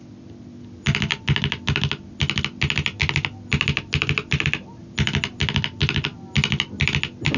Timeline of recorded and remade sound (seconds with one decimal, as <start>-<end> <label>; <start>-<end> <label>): 0.0-7.4 recorded